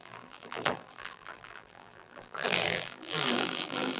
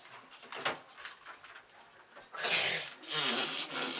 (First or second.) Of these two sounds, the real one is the second